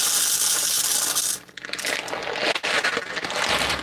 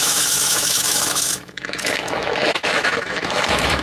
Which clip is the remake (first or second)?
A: second